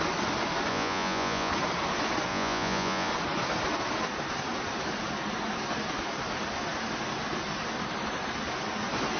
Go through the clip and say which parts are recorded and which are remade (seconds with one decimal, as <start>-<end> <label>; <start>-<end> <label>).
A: 0.0-0.7 recorded; 0.7-1.5 remade; 1.5-2.3 recorded; 2.3-3.1 remade; 3.1-9.2 recorded